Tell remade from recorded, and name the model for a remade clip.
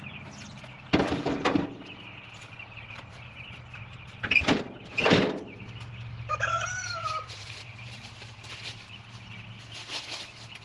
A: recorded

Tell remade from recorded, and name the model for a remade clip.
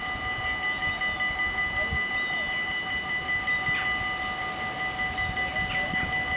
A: recorded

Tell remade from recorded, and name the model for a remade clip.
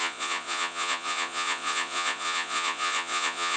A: remade, vocoder, Vocos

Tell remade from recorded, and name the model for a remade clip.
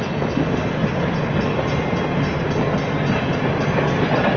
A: recorded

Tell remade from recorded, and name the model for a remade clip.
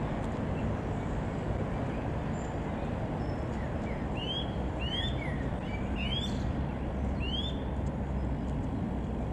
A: recorded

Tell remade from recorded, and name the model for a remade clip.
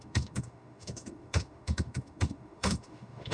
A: remade, autoencoder, DAC-VAE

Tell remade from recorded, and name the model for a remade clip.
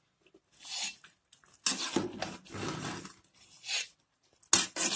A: recorded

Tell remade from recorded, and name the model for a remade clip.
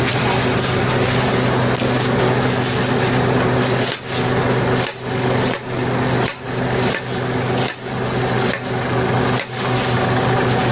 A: recorded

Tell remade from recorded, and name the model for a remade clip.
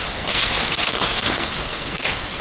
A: remade, codec, SNAC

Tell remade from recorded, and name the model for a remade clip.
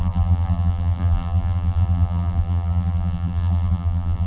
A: remade, vocoder, BigVGAN v2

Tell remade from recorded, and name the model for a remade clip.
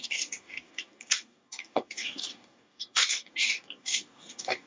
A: remade, codec, DAC